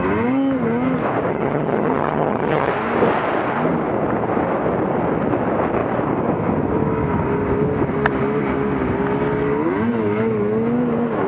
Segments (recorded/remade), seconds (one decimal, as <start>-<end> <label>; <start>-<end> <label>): 0.0-1.3 recorded; 1.3-2.7 remade; 2.7-11.3 recorded